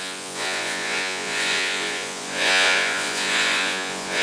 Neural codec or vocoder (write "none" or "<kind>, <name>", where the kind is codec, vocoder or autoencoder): vocoder, Vocos